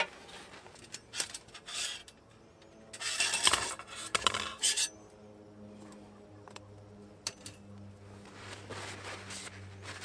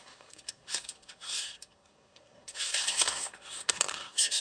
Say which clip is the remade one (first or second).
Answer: second